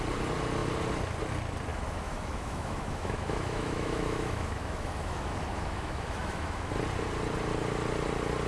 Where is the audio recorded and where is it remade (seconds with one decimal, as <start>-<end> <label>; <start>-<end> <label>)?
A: 0.0-1.7 recorded; 1.7-6.7 remade; 6.7-8.5 recorded